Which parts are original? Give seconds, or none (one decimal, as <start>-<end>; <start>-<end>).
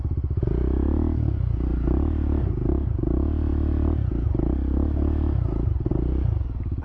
0.0-1.7; 2.7-3.5; 4.1-6.8